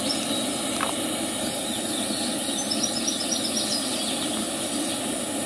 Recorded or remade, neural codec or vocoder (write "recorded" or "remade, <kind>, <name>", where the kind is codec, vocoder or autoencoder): recorded